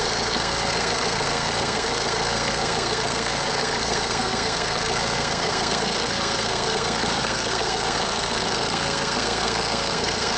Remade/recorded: remade